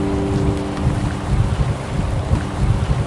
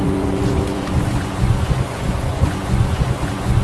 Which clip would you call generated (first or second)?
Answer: second